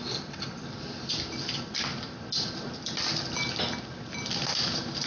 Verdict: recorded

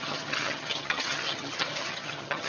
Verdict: remade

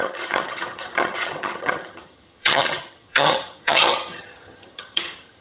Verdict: remade